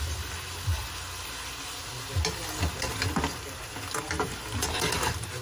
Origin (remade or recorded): recorded